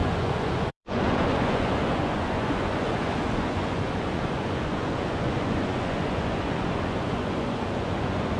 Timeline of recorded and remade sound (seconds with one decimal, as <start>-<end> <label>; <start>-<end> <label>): 0.0-8.4 remade